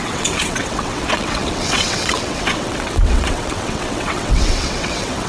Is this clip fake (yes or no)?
yes